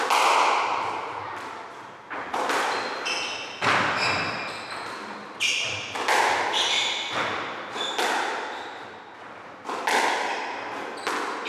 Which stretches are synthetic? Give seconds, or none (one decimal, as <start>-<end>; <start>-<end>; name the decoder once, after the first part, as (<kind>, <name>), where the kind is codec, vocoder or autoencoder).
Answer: none